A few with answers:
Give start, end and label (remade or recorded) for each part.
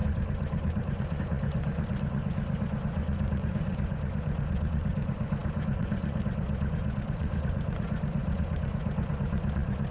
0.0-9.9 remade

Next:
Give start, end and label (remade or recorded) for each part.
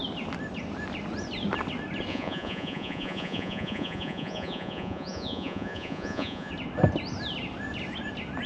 0.0-2.1 recorded; 2.1-6.5 remade; 6.5-8.5 recorded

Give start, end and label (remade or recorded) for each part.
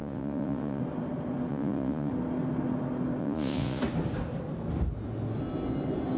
0.0-0.8 remade; 0.8-1.5 recorded; 1.5-2.1 remade; 2.1-3.2 recorded; 3.2-3.8 remade; 3.8-6.2 recorded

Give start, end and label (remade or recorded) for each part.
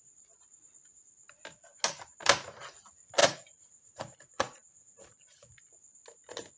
0.0-3.2 recorded; 3.2-5.5 remade; 5.5-6.6 recorded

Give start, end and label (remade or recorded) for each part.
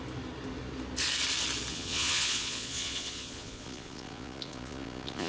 0.0-1.7 recorded; 1.7-5.3 remade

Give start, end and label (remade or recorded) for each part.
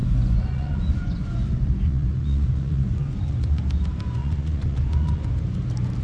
0.0-3.6 remade; 3.6-4.2 recorded; 4.2-5.3 remade; 5.3-6.0 recorded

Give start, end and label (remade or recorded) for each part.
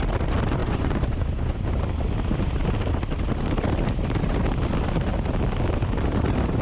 0.0-0.6 recorded; 0.6-1.6 remade; 1.6-6.6 recorded